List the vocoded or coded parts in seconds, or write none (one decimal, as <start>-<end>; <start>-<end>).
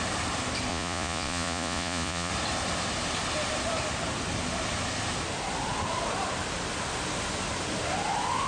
0.7-2.3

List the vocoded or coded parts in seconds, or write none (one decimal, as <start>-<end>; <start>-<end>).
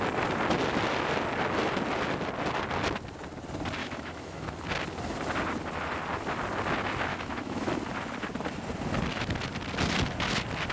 3.8-4.5; 7.1-7.7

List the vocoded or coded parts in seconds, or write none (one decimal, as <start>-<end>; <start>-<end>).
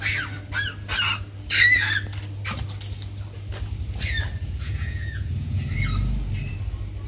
4.4-5.6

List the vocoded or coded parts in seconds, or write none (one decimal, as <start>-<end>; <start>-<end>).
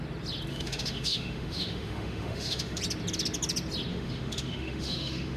0.5-2.8; 3.9-5.4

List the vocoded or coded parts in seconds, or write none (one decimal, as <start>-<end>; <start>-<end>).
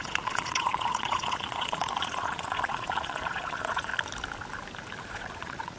0.0-3.9; 5.0-5.8